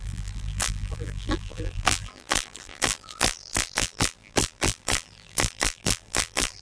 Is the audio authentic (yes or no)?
no